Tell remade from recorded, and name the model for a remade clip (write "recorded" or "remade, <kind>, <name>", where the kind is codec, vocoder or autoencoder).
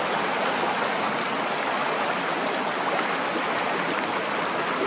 recorded